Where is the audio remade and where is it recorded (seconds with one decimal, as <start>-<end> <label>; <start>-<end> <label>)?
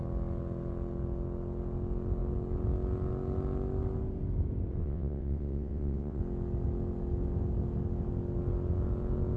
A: 0.0-4.8 recorded; 4.8-6.2 remade; 6.2-9.4 recorded